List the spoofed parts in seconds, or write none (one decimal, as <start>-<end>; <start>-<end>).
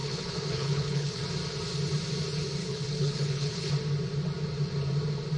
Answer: 0.0-1.2; 2.6-3.7